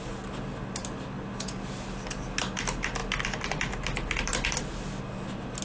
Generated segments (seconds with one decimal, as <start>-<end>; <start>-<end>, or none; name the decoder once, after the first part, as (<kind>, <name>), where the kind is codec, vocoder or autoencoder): none